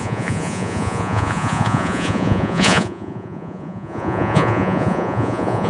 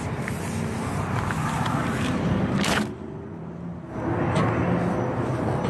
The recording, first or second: second